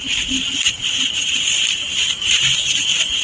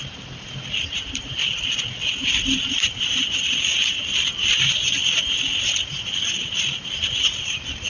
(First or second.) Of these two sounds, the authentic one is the second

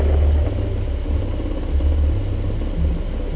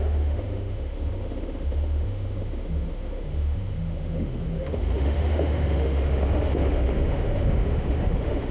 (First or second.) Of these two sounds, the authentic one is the first